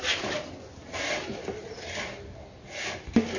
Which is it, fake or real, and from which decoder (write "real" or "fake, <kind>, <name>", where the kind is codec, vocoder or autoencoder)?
real